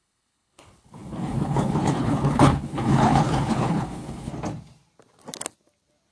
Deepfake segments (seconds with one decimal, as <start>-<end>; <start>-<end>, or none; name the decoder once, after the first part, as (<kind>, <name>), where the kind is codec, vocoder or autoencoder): 0.0-4.3 (codec, HILCodec)